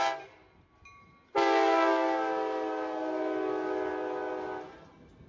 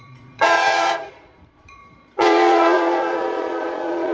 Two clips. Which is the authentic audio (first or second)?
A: first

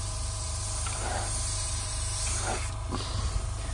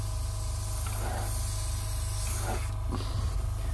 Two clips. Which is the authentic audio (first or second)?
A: second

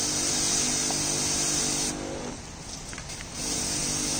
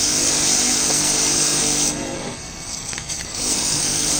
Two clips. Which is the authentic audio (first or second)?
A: first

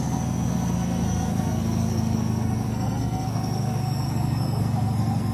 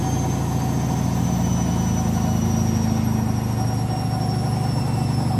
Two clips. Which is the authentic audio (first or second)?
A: second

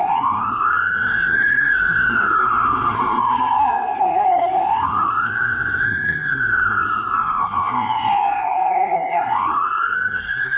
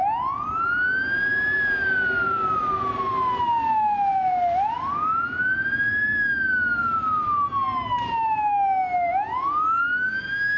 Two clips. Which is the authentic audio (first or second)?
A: second